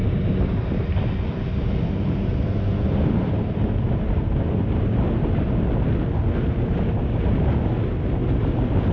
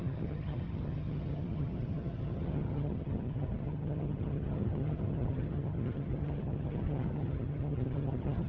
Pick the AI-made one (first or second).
second